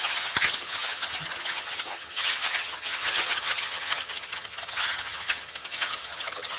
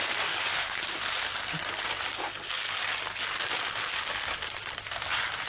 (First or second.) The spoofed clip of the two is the first